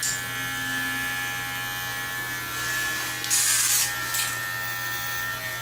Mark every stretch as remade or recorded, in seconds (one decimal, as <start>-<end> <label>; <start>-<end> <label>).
0.0-5.6 recorded